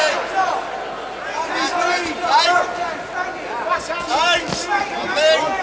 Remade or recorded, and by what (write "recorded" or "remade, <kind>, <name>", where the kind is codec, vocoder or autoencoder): recorded